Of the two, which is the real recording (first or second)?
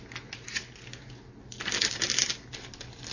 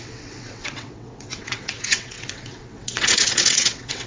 first